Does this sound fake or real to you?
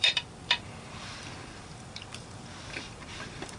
fake